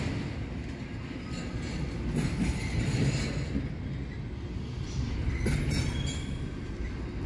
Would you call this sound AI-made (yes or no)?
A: no